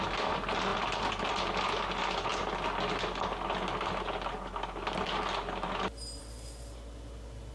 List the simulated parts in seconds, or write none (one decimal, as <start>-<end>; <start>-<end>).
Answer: none